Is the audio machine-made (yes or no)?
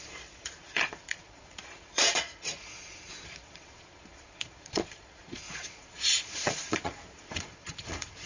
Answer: yes